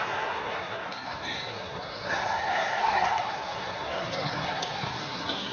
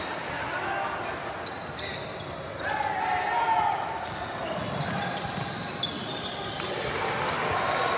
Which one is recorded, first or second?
second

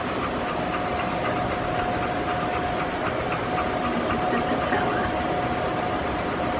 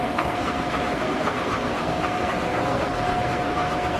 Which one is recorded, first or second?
first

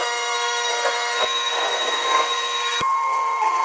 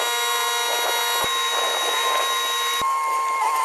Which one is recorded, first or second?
second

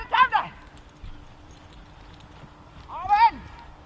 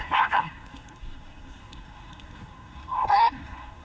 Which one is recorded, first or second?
first